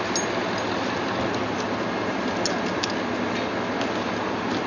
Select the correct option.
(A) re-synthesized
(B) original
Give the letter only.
B